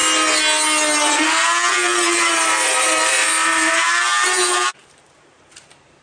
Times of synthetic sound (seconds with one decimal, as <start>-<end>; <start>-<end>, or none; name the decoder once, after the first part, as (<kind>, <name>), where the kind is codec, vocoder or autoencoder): 1.7-6.0 (vocoder, BigVGAN v2)